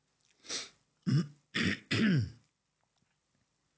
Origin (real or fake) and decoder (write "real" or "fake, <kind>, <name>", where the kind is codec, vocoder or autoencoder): real